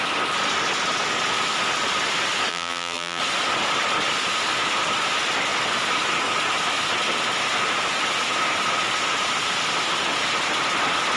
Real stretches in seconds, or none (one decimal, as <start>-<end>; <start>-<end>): 0.0-2.5; 3.2-11.2